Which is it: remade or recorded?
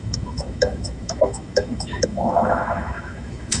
remade